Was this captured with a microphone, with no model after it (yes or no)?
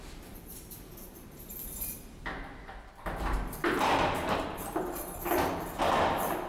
no